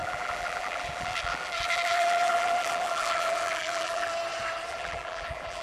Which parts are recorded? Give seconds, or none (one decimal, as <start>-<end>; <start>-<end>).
4.1-4.7